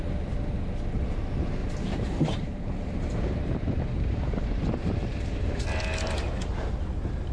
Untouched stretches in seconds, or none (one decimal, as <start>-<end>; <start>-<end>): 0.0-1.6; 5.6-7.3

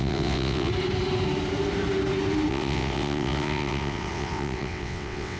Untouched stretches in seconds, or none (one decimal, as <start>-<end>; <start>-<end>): 0.7-2.5

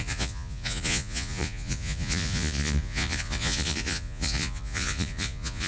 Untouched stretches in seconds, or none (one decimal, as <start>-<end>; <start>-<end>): none

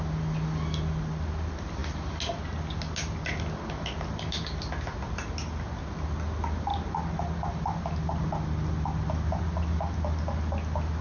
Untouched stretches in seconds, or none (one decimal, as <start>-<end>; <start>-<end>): 0.0-11.0